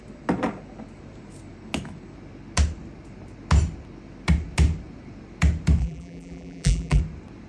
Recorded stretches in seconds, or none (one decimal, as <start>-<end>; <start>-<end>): 0.0-5.8; 7.0-7.5